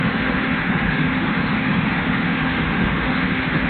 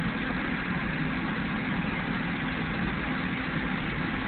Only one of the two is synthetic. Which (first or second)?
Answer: first